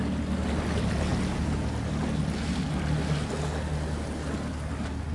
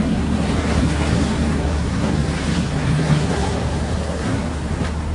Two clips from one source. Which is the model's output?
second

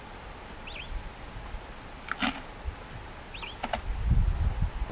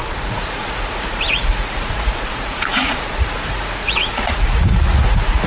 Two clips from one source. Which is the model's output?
second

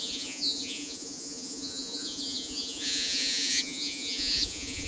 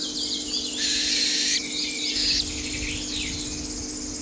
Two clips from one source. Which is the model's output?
first